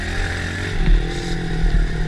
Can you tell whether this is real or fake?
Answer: real